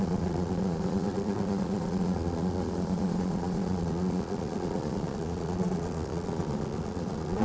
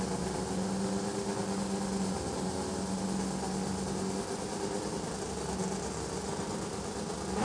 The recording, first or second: second